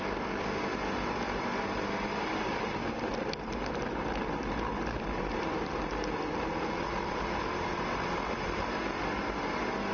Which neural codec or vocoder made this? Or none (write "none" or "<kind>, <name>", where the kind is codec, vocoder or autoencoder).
none